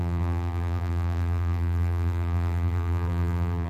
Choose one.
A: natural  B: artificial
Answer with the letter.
B